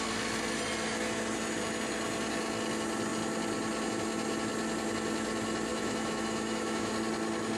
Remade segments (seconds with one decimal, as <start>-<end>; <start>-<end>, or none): 5.7-6.9